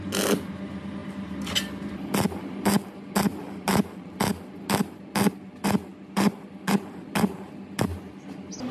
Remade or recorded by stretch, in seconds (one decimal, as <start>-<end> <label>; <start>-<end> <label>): 0.0-1.0 recorded; 1.0-1.9 remade; 1.9-3.3 recorded; 3.3-4.3 remade; 4.3-5.9 recorded; 5.9-7.5 remade; 7.5-8.7 recorded